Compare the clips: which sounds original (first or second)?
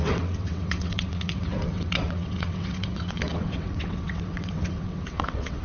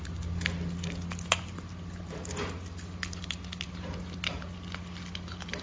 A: second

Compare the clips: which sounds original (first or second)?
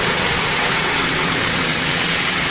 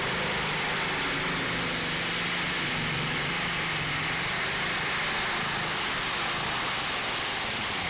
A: second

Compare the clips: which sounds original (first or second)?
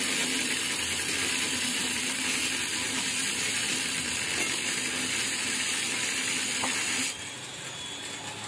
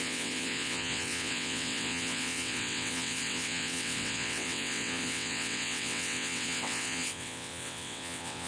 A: first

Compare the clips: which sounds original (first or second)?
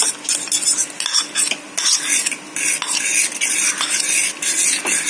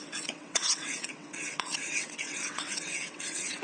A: first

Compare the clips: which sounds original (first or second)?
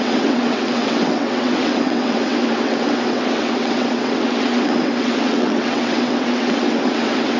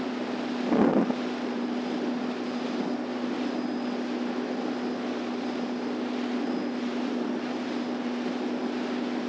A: second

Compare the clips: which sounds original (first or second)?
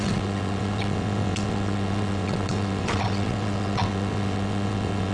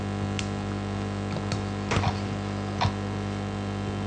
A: second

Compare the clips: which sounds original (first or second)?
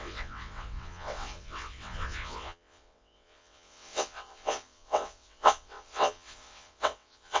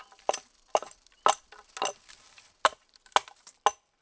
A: second